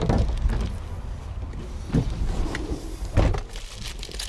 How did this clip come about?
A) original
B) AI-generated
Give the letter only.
A